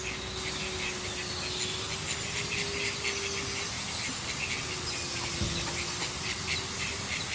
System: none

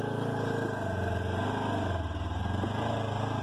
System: none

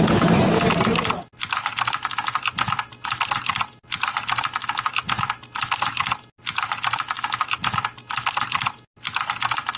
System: none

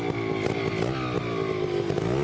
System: none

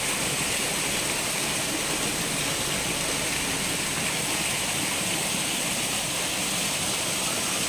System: none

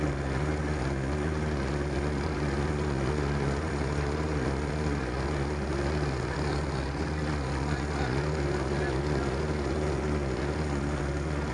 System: vocoder, Vocos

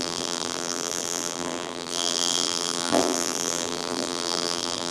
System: vocoder, BigVGAN v2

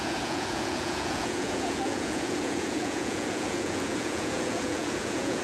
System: vocoder, Vocos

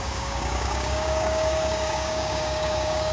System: codec, DAC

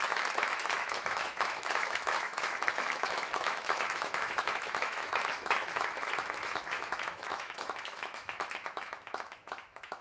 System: autoencoder, DAC-VAE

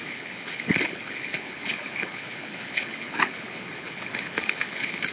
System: codec, HILCodec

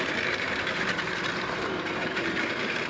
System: vocoder, BigVGAN v2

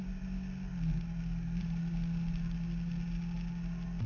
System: none